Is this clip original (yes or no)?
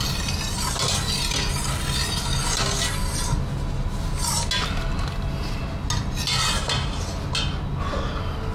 yes